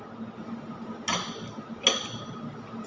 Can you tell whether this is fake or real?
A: real